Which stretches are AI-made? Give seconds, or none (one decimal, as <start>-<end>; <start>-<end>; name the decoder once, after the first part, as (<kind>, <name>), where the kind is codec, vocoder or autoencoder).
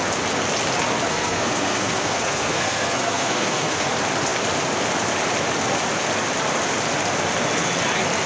1.1-3.9 (codec, SNAC)